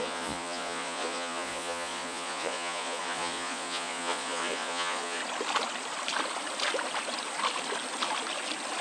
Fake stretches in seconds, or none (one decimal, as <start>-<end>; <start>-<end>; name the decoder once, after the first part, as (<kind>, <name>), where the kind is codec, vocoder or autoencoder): 0.0-5.2 (vocoder, Vocos)